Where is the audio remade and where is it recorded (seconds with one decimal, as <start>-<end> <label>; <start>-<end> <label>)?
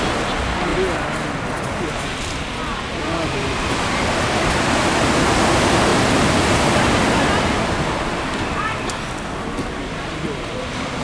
0.0-11.0 recorded